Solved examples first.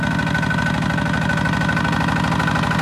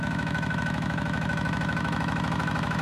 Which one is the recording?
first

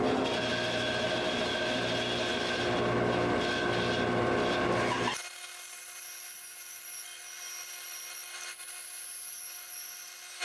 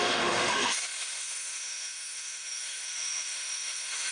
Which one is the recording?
first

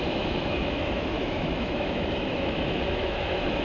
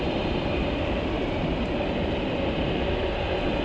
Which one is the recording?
second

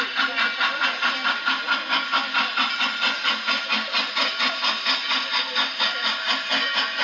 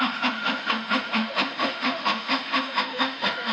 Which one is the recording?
first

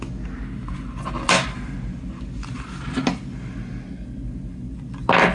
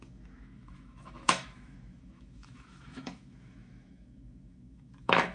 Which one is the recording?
first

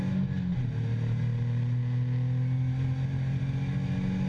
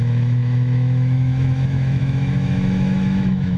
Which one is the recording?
first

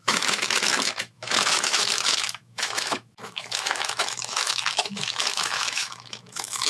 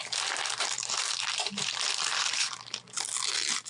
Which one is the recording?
second